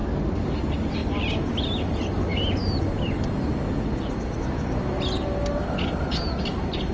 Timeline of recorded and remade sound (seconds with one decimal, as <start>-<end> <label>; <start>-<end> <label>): 0.0-6.9 recorded